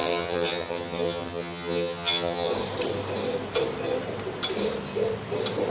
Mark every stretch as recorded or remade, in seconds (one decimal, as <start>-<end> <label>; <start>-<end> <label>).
0.0-2.5 remade; 2.5-5.7 recorded